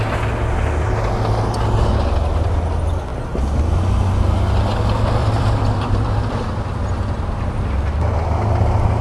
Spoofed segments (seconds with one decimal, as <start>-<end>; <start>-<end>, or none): 5.2-6.6